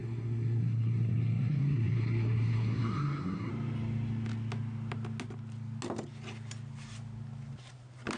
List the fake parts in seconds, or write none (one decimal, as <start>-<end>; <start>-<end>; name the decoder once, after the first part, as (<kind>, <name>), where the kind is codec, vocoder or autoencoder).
0.0-3.5 (codec, SNAC)